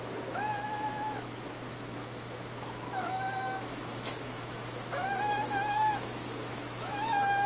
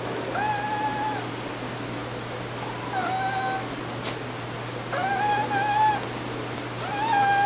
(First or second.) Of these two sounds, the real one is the second